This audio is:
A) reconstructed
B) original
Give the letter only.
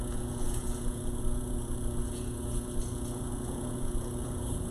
A